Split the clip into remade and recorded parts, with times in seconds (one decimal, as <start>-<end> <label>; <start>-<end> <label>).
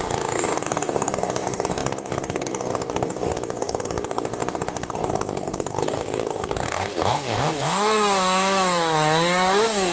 0.0-9.9 remade